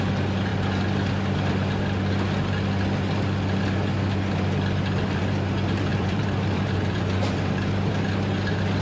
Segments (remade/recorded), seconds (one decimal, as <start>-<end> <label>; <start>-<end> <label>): 0.0-5.9 recorded; 5.9-7.9 remade; 7.9-8.8 recorded